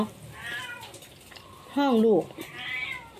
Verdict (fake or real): real